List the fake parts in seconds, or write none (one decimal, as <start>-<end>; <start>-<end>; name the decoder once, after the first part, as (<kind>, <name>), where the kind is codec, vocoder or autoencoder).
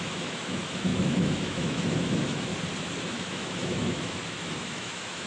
0.0-2.5 (autoencoder, DAC-VAE); 3.1-5.3